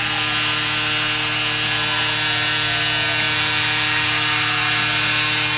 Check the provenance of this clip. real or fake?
real